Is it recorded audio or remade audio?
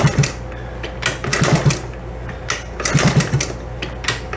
recorded